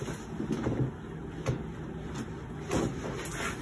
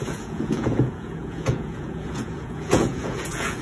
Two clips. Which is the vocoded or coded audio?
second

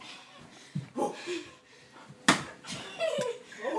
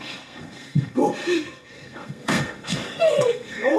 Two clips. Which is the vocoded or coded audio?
second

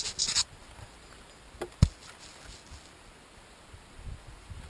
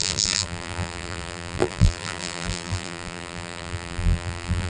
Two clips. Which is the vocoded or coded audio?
second